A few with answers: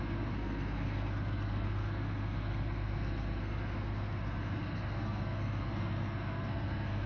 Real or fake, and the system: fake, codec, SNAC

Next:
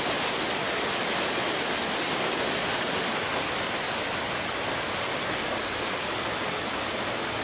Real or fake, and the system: real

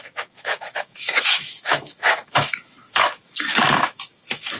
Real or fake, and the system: fake, autoencoder, DAC-VAE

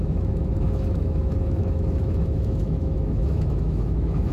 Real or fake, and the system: fake, autoencoder, DAC-VAE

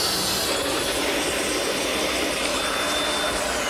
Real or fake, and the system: real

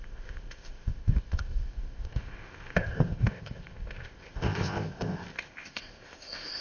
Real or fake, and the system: fake, codec, ZipCodec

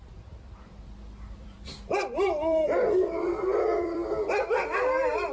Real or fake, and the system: fake, vocoder, BigVGAN v2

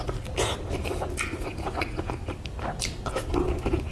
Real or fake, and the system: real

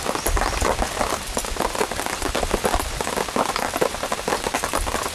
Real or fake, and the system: real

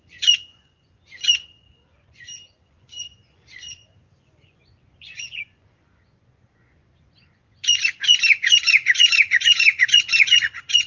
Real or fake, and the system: fake, vocoder, Vocos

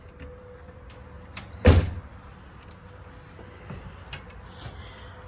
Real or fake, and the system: real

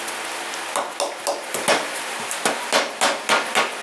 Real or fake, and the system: real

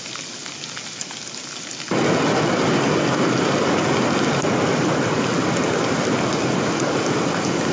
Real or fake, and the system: real